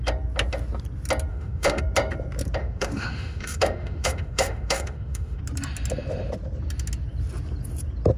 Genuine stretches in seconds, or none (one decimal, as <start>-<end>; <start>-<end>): 0.0-1.3; 1.8-2.6; 5.4-8.2